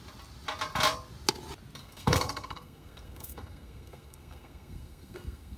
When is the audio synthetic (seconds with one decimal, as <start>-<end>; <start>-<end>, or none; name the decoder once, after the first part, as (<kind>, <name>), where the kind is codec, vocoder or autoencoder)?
1.8-5.6 (codec, SNAC)